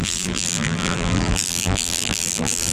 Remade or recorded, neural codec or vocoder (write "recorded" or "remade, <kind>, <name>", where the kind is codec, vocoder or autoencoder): remade, vocoder, BigVGAN v2